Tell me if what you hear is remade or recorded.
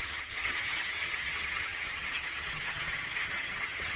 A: remade